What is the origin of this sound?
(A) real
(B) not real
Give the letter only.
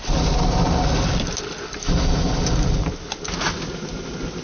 A